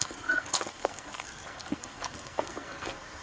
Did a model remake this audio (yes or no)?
yes